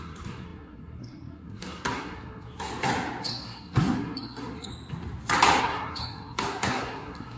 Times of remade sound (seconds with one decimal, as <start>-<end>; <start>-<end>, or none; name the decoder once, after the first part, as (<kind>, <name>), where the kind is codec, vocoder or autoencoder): 0.0-2.7 (codec, SNAC); 3.2-4.7; 5.6-7.4